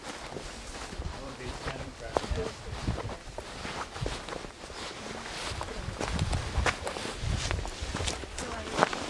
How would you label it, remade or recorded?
remade